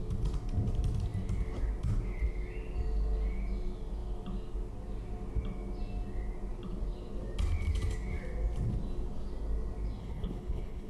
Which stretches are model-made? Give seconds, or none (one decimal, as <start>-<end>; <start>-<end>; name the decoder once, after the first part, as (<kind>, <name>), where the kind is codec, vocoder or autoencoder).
10.0-10.9 (codec, HILCodec)